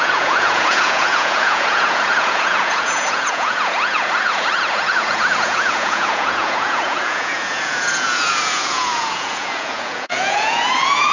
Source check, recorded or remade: remade